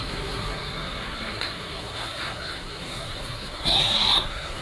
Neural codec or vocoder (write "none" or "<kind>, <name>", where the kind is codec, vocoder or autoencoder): codec, SNAC